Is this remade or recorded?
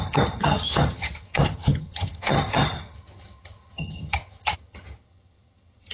remade